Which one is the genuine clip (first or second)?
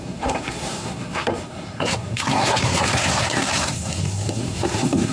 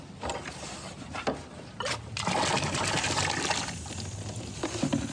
second